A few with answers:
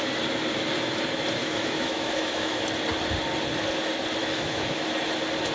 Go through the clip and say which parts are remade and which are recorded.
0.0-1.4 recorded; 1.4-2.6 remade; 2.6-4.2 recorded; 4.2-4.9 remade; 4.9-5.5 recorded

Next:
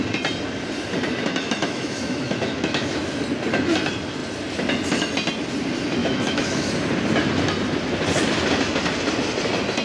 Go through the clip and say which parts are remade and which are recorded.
0.0-1.6 recorded; 1.6-3.0 remade; 3.0-6.0 recorded; 6.0-6.7 remade; 6.7-9.8 recorded

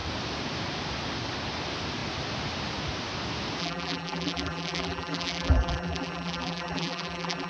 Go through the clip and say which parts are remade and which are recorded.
0.0-3.6 recorded; 3.6-7.5 remade